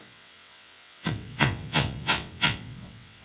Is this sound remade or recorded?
remade